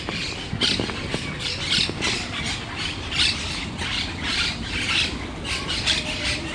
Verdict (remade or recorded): recorded